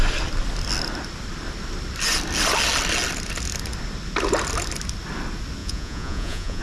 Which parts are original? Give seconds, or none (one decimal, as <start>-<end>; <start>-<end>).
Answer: 0.0-5.6

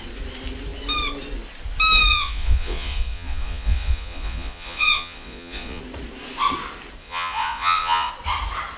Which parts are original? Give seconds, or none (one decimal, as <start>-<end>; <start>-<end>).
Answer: 0.0-2.1; 5.8-7.0; 8.1-8.8

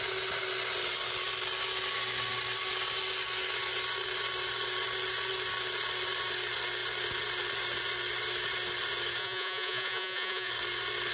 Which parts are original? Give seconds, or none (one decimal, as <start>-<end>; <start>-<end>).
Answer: 0.0-9.2; 10.5-11.1

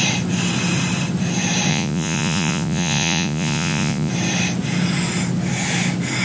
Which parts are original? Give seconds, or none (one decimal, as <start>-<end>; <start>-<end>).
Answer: 0.0-1.7; 4.1-6.2

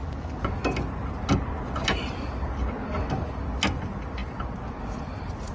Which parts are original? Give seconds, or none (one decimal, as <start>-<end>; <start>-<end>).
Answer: 0.0-5.5

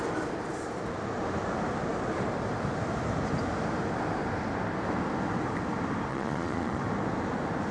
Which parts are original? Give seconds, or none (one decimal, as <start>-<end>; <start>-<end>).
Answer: 0.0-6.1; 6.8-7.7